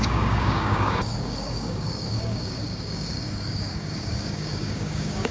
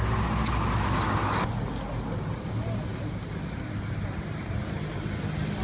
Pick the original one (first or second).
second